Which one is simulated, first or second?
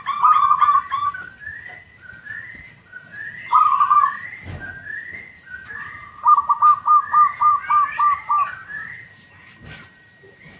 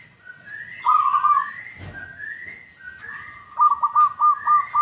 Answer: first